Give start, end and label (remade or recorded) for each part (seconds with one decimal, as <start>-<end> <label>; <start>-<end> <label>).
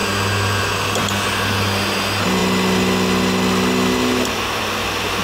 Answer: 0.0-5.2 recorded